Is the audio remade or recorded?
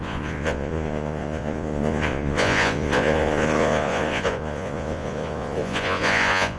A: remade